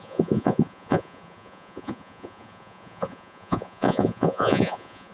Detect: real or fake fake